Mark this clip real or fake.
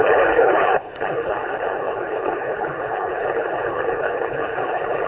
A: fake